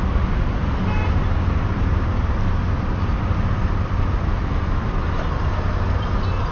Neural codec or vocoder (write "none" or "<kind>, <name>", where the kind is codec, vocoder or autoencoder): none